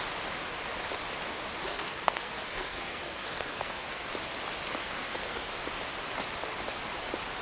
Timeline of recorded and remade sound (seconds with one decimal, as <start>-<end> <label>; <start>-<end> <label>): 0.0-1.7 recorded; 1.7-4.1 remade; 4.1-4.8 recorded; 4.8-5.6 remade; 5.6-7.4 recorded